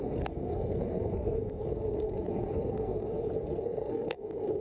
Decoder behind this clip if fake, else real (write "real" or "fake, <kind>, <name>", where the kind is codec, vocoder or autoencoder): fake, codec, SNAC